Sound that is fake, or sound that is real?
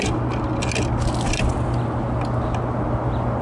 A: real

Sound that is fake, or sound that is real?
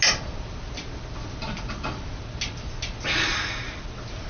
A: real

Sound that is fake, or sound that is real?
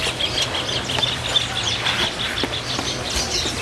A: real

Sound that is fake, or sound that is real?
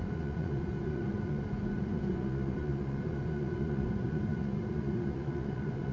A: fake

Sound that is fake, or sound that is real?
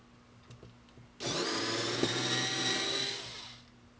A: real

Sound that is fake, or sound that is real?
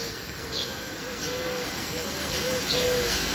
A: fake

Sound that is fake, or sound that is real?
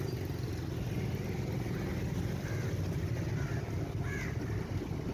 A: real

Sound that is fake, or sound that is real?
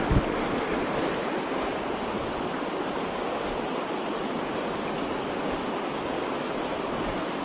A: real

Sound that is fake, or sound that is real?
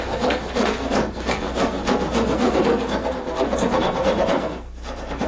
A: fake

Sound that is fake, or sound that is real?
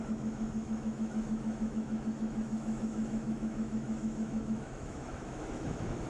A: fake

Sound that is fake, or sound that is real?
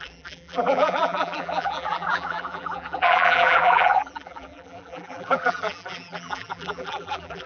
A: fake